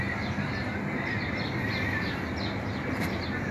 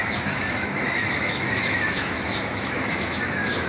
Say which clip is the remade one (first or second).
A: second